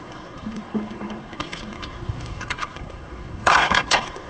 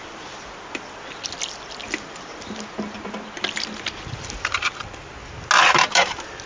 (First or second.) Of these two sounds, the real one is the second